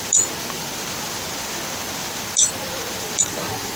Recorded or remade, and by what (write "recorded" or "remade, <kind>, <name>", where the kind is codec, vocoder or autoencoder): recorded